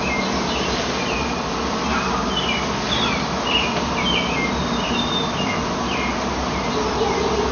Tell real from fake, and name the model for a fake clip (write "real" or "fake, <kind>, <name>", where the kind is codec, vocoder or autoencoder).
real